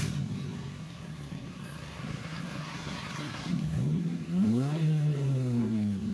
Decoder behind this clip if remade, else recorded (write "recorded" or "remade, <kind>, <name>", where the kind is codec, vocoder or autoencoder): remade, codec, SNAC